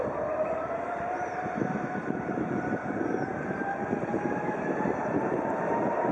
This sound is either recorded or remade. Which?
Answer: remade